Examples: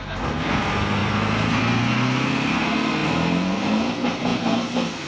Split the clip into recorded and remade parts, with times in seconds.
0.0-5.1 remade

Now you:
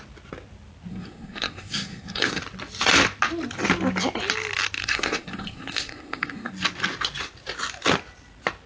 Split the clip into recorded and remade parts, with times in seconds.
0.0-0.9 recorded; 0.9-2.4 remade; 2.4-4.8 recorded; 4.8-6.5 remade; 6.5-8.7 recorded

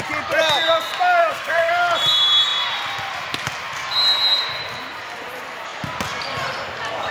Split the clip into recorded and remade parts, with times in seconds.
0.0-1.2 recorded; 1.2-1.7 remade; 1.7-7.1 recorded

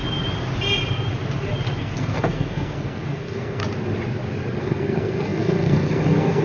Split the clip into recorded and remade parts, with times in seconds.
0.0-1.8 recorded; 1.8-3.6 remade; 3.6-4.6 recorded; 4.6-6.4 remade

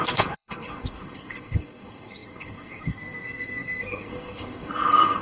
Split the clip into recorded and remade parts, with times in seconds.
0.0-5.2 remade